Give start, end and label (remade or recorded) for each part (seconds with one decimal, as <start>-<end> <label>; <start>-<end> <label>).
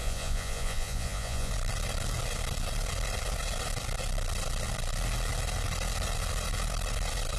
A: 0.0-1.5 remade; 1.5-7.4 recorded